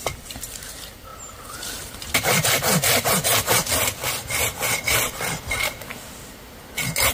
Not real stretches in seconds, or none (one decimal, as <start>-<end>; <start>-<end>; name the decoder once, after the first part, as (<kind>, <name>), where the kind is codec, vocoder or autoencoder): 1.1-2.5 (vocoder, BigVGAN v2)